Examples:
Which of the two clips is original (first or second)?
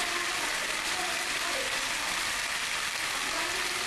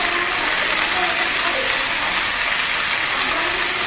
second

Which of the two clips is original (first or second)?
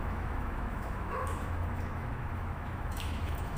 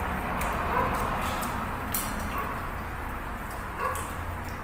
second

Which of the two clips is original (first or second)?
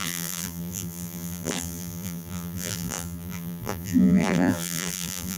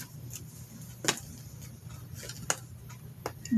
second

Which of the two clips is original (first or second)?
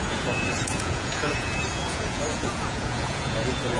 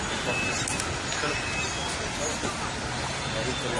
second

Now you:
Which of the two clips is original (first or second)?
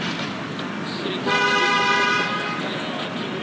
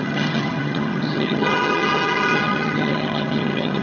first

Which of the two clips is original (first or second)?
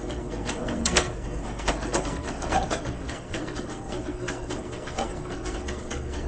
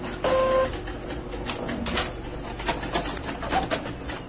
second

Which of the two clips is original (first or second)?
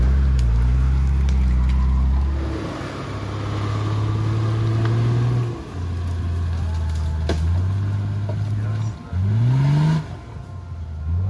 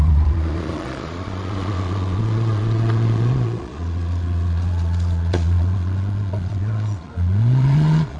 first